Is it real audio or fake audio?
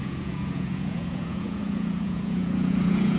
fake